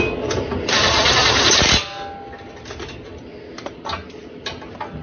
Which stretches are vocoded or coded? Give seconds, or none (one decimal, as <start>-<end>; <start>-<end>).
none